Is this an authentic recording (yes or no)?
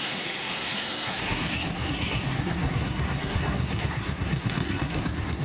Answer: no